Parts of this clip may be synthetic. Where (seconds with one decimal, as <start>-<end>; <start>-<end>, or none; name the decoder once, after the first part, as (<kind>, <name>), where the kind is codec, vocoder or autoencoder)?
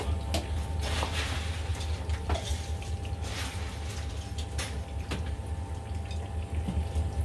none